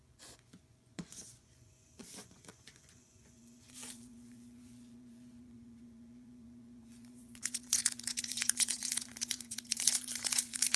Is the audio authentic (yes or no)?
no